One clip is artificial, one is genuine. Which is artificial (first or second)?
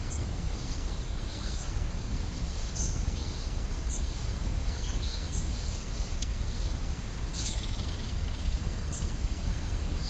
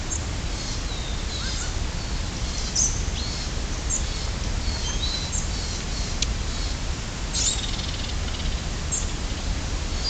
first